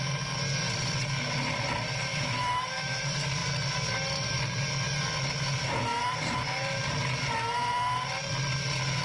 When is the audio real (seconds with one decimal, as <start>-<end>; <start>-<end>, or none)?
0.0-2.1; 3.0-9.0